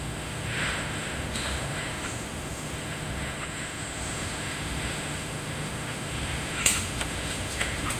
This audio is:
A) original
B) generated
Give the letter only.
B